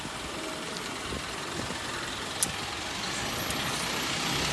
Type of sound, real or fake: real